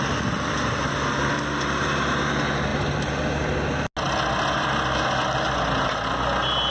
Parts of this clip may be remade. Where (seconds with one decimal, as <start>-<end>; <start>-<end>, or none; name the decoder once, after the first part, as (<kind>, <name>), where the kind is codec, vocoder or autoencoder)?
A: none